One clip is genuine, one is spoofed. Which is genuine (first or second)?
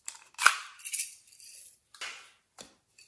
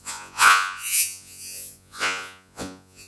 first